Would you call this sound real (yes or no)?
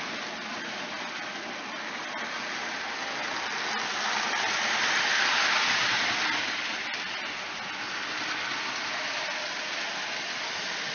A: yes